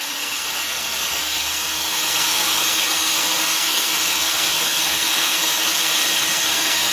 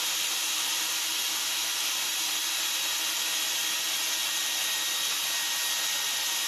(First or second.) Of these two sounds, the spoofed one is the first